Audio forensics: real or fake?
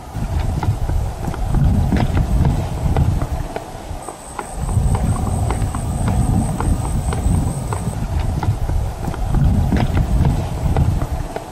real